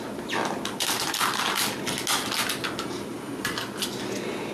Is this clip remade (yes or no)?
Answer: no